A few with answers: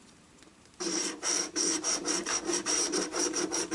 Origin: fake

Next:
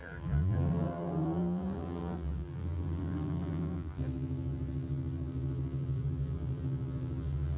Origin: fake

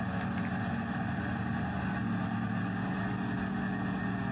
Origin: real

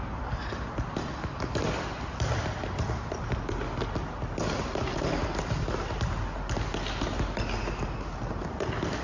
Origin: real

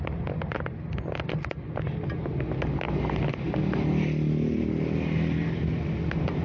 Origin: real